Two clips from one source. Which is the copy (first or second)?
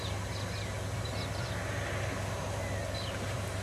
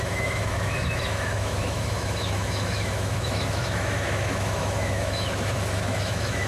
second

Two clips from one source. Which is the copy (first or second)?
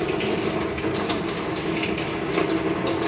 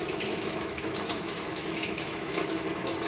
second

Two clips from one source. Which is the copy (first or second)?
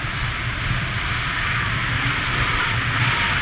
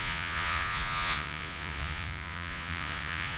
second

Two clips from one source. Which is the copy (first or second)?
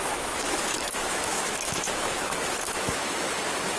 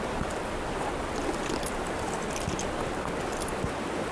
first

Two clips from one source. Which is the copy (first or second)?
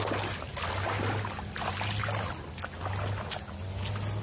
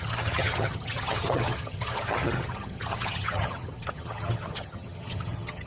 second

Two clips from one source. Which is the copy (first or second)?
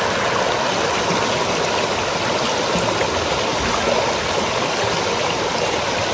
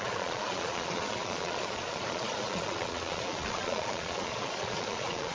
second